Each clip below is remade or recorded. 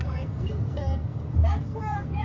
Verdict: remade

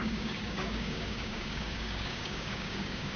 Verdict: remade